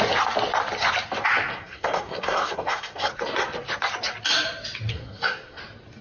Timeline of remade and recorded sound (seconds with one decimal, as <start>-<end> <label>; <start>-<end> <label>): 0.0-1.5 recorded; 1.5-3.1 remade; 3.1-4.9 recorded; 4.9-5.6 remade; 5.6-6.0 recorded